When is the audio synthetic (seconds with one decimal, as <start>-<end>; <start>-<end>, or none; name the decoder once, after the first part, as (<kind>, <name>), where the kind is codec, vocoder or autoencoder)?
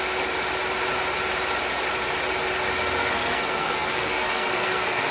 3.0-5.1 (codec, SNAC)